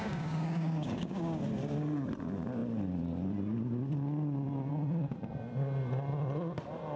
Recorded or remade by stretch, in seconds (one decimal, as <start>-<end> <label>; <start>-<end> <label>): 0.0-1.4 remade; 1.4-7.0 recorded